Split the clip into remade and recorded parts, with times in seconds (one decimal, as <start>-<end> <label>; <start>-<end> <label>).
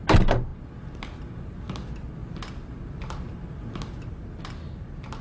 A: 0.0-5.2 recorded